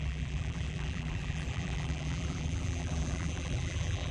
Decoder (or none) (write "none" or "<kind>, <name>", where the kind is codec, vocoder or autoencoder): vocoder, BigVGAN v2